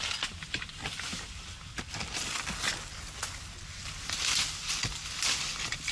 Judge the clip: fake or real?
real